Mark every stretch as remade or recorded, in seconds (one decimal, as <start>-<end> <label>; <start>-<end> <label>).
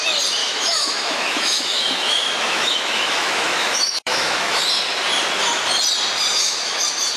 0.0-0.4 recorded; 0.4-4.6 remade; 4.6-6.3 recorded; 6.3-6.8 remade; 6.8-7.2 recorded